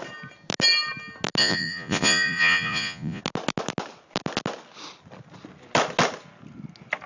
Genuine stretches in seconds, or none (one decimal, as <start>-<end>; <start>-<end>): 0.0-1.4; 3.2-7.1